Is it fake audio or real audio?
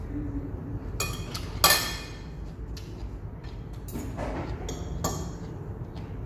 real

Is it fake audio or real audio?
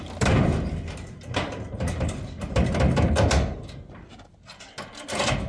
real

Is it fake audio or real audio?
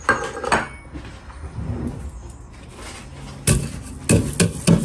real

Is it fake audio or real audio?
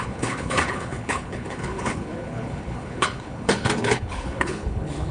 fake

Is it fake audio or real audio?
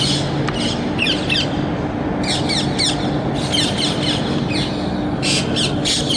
real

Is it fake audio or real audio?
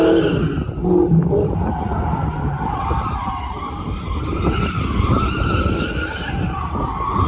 real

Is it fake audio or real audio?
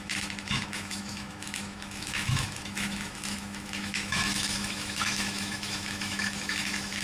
fake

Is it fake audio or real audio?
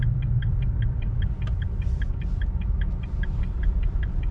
real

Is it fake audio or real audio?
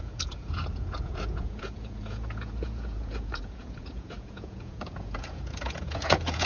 fake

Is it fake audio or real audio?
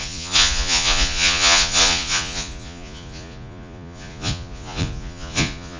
fake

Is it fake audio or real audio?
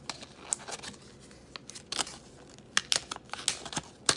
real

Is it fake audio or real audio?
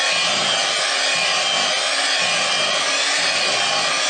real